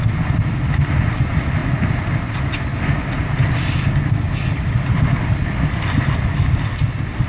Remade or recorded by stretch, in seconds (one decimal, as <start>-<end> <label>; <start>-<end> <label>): 0.0-7.3 recorded